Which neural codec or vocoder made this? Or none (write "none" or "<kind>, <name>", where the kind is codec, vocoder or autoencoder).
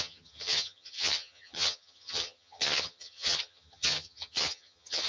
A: vocoder, HiFi-GAN